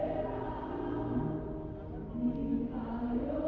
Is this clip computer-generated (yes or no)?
no